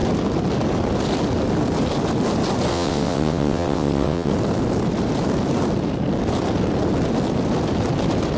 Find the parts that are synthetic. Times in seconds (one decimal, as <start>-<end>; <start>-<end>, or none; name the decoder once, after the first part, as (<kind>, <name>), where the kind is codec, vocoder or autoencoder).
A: 2.7-4.3 (vocoder, WaveNeXt)